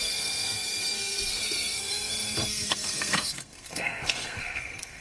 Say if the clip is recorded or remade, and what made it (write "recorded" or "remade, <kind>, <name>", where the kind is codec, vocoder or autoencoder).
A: remade, codec, SNAC